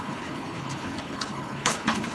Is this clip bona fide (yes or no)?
no